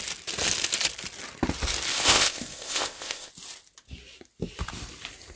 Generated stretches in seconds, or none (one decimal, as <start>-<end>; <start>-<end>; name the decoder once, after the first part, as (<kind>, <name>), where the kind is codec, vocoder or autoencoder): 1.9-3.3 (codec, ZipCodec)